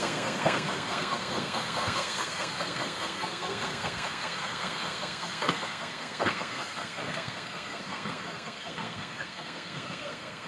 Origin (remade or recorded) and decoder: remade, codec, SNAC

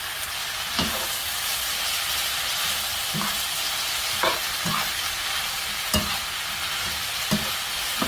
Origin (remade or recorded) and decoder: recorded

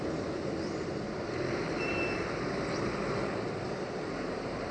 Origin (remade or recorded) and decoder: recorded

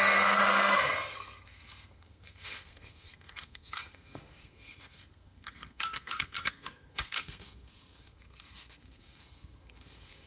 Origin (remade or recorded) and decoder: remade, codec, SNAC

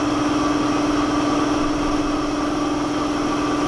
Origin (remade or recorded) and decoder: recorded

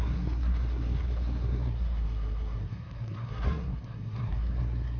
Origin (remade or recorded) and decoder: remade, codec, SNAC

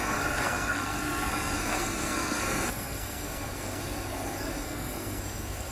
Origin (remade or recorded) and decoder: remade, codec, SNAC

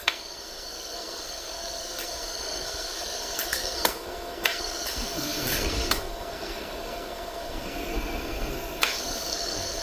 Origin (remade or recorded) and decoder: remade, codec, SNAC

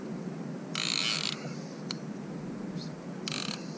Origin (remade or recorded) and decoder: recorded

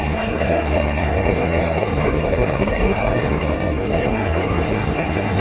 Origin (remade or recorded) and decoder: remade, codec, SNAC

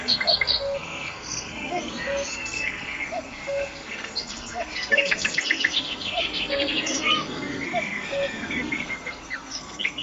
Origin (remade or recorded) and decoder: remade, codec, SNAC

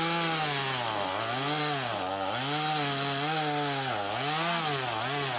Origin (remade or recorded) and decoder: recorded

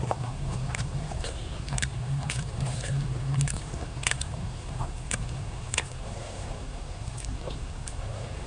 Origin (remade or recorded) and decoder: remade, codec, SNAC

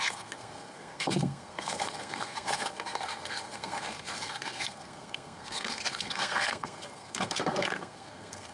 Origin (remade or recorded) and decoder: remade, codec, SNAC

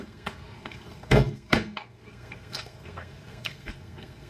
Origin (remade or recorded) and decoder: remade, codec, SNAC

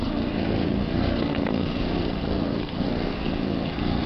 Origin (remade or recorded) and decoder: remade, codec, SNAC